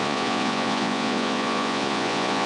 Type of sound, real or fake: fake